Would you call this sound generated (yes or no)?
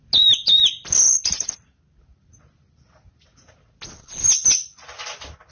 no